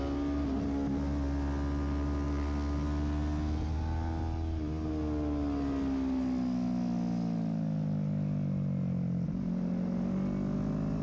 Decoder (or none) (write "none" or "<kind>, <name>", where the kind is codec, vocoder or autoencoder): none